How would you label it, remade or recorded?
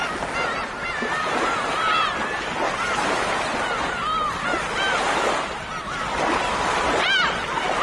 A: recorded